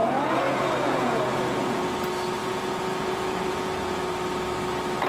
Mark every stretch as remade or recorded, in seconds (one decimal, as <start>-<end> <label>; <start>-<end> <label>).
0.0-1.8 remade; 1.8-2.4 recorded; 2.4-4.0 remade; 4.0-5.1 recorded